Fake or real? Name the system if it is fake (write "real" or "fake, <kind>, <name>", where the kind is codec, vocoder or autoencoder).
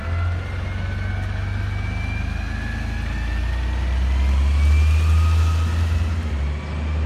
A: real